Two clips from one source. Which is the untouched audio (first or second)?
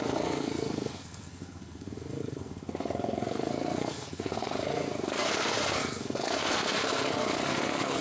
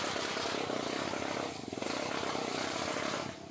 second